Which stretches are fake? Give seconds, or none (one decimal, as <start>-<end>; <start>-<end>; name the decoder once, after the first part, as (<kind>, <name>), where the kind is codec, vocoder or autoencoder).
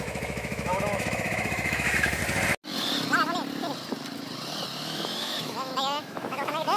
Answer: 0.0-2.2 (autoencoder, DAC-VAE); 4.8-6.8